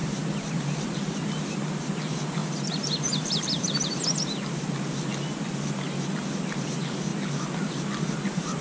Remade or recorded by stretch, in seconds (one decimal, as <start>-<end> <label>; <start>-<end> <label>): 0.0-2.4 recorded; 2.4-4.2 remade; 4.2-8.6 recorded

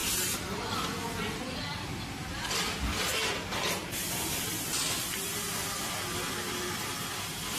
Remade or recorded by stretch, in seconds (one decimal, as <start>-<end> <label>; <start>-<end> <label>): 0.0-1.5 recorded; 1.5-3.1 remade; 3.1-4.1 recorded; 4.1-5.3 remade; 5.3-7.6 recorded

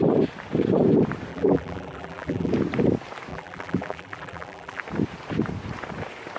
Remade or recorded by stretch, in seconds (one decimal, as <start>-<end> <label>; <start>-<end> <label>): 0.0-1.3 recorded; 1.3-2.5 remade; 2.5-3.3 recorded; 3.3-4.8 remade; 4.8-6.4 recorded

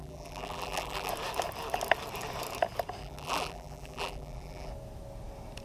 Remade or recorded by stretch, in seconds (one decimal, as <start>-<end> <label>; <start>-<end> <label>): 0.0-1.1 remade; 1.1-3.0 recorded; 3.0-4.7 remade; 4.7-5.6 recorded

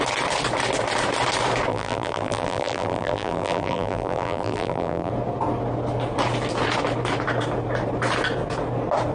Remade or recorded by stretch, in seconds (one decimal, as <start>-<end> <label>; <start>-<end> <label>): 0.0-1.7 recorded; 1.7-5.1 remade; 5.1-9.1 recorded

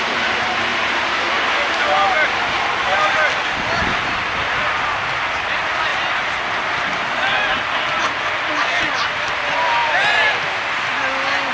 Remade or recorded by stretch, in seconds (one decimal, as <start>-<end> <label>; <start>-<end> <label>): 0.0-9.8 recorded; 9.8-10.4 remade; 10.4-11.5 recorded